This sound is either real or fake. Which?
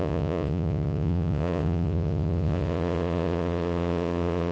fake